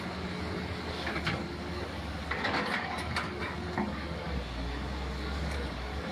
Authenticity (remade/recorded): remade